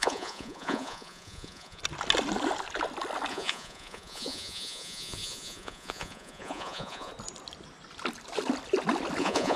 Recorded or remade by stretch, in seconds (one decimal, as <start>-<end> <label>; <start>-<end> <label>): 0.0-1.8 remade; 1.8-3.3 recorded; 3.3-7.1 remade; 7.1-9.2 recorded; 9.2-9.6 remade